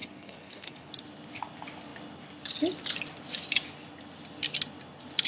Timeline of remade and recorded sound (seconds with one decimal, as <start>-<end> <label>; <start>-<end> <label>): 0.0-0.9 remade; 0.9-5.3 recorded